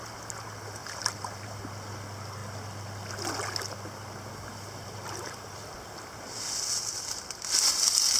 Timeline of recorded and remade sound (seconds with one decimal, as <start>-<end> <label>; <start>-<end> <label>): 0.0-0.8 recorded; 0.8-1.6 remade; 1.6-8.2 recorded